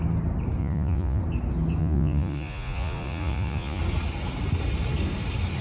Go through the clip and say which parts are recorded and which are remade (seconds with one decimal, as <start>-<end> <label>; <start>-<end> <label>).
0.0-0.6 recorded; 0.6-1.2 remade; 1.2-1.8 recorded; 1.8-3.8 remade; 3.8-5.6 recorded